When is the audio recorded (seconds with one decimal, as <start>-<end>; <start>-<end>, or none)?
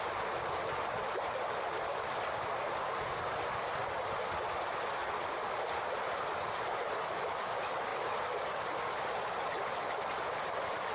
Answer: 0.0-10.9